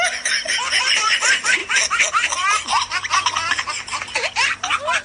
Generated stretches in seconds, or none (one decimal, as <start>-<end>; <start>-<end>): none